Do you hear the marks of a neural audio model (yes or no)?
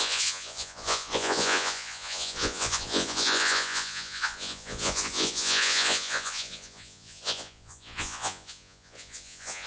yes